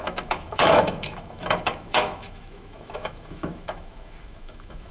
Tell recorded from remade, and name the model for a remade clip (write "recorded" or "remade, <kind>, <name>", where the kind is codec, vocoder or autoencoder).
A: remade, autoencoder, DAC-VAE